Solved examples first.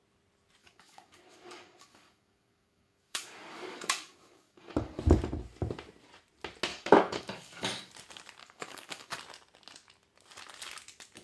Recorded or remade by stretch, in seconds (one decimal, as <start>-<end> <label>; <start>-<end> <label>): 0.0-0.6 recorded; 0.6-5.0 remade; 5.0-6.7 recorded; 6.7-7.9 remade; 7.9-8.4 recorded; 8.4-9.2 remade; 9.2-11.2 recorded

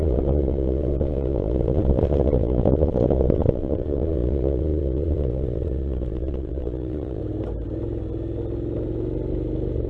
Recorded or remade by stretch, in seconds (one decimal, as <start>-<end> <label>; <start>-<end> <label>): 0.0-7.2 remade; 7.2-9.9 recorded

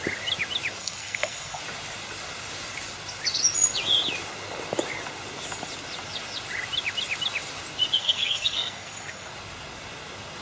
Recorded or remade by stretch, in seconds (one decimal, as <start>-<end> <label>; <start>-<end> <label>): 0.0-0.8 recorded; 0.8-1.6 remade; 1.6-8.0 recorded; 8.0-9.3 remade; 9.3-10.4 recorded

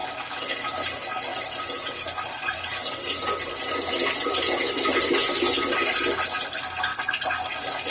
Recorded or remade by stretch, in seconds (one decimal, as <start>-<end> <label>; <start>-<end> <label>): 0.0-7.9 recorded

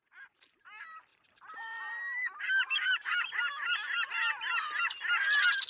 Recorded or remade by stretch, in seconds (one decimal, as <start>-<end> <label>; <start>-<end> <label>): 0.0-3.6 remade; 3.6-5.7 recorded

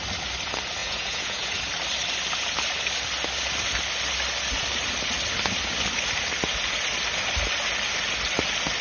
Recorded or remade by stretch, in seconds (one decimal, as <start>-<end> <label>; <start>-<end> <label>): 0.0-0.8 recorded; 0.8-1.5 remade; 1.5-8.8 recorded

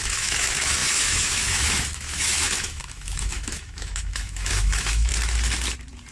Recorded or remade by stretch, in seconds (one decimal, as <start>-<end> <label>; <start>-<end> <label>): 0.0-5.1 remade; 5.1-6.1 recorded

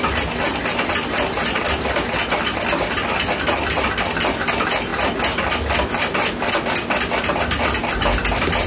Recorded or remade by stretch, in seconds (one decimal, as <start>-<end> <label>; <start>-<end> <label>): 0.0-8.7 recorded